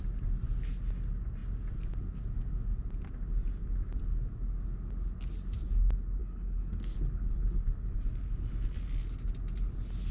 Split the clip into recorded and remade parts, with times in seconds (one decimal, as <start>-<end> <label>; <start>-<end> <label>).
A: 0.0-6.2 recorded; 6.2-8.1 remade; 8.1-10.1 recorded